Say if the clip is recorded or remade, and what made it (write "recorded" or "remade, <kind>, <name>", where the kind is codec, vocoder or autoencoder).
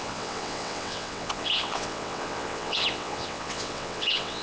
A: remade, vocoder, WaveNeXt